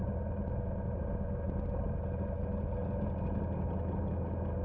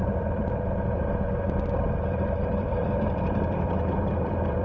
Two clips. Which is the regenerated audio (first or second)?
second